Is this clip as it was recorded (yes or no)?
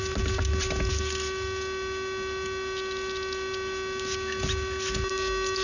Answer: yes